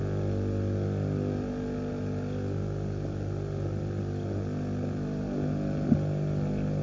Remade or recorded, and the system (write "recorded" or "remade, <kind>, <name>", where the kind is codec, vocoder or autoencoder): recorded